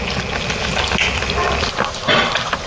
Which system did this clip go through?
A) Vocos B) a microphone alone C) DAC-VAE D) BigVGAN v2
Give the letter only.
B